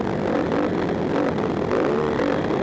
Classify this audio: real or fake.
real